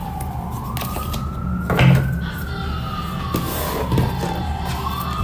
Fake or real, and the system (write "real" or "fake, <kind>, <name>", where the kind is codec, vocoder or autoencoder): real